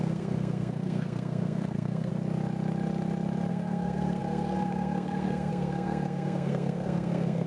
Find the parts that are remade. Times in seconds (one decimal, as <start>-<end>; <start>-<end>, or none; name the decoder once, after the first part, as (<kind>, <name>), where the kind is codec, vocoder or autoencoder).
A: 0.0-2.1 (codec, SNAC); 3.5-7.5